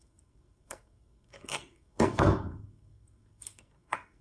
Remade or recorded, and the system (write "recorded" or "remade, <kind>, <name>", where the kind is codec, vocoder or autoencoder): remade, codec, SNAC